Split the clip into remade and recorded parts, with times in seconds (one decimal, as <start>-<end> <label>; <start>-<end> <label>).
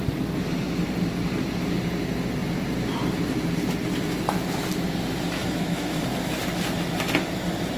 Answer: 0.0-5.4 recorded; 5.4-6.0 remade; 6.0-7.8 recorded